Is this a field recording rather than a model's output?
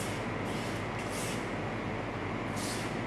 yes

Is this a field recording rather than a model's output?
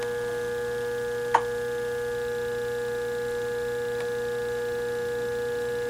yes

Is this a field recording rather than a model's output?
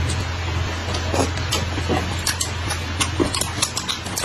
yes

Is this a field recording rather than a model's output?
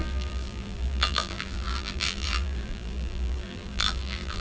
no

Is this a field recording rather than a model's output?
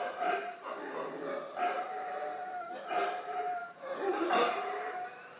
no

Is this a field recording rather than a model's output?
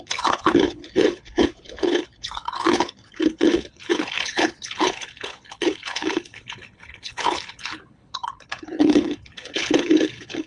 no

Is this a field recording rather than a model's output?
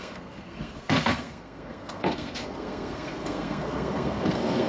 no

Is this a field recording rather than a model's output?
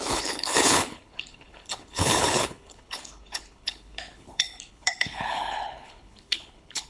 no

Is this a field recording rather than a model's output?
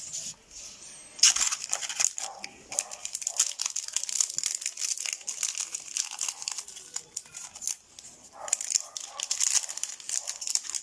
yes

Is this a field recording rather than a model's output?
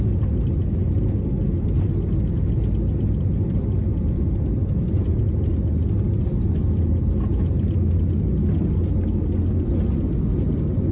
yes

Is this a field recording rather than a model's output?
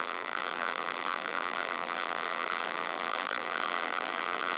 no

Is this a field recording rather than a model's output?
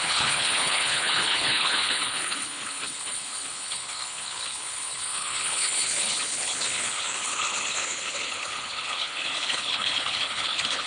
no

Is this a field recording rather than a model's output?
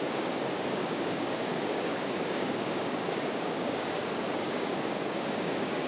no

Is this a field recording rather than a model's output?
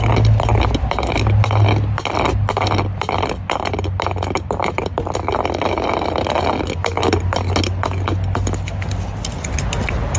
yes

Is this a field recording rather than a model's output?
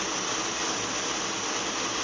yes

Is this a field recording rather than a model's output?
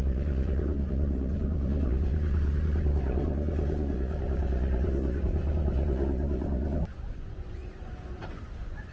no